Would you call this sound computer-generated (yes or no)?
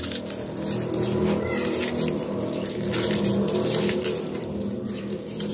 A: no